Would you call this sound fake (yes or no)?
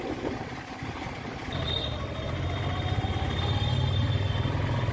no